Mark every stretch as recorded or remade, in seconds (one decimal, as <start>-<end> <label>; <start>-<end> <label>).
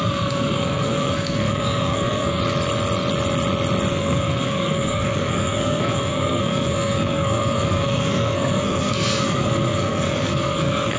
0.0-2.4 remade; 2.4-3.9 recorded; 3.9-11.0 remade